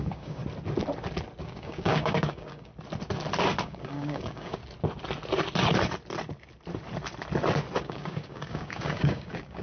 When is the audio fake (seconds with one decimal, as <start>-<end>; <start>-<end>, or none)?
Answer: 0.0-0.4; 1.4-2.7; 3.6-4.6; 7.8-9.6